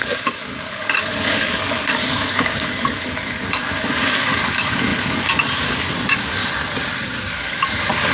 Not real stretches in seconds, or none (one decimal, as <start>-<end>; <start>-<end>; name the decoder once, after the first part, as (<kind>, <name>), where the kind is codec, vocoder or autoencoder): 0.0-6.4 (codec, DAC); 7.4-8.1